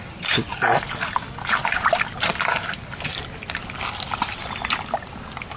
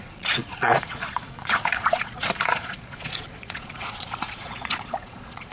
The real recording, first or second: first